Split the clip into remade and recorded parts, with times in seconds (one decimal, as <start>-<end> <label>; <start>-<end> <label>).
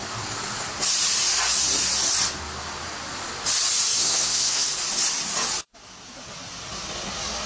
0.0-4.0 recorded; 4.0-4.7 remade; 4.7-7.5 recorded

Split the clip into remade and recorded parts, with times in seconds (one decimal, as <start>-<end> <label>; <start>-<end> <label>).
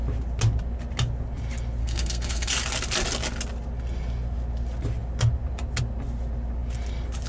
0.0-1.8 recorded; 1.8-2.5 remade; 2.5-7.3 recorded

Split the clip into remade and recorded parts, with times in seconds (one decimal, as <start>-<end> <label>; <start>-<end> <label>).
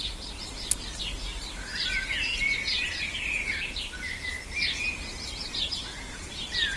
0.0-6.8 recorded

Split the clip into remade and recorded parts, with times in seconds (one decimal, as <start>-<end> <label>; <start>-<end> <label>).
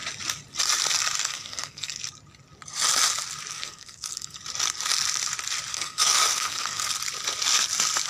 0.0-1.2 recorded; 1.2-2.0 remade; 2.0-3.5 recorded; 3.5-4.4 remade; 4.4-5.7 recorded; 5.7-6.9 remade; 6.9-8.1 recorded